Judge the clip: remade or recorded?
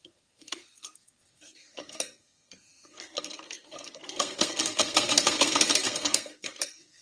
remade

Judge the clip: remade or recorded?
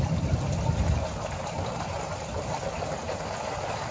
recorded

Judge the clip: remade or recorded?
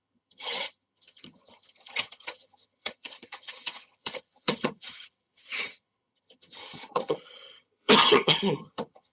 remade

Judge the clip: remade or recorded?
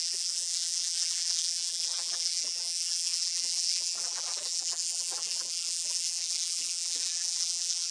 remade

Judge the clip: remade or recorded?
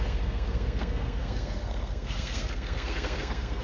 remade